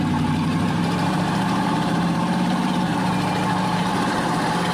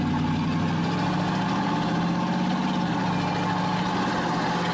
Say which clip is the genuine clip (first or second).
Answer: second